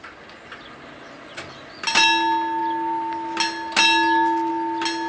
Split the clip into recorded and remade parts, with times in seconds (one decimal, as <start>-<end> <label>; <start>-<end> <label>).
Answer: 0.0-5.1 recorded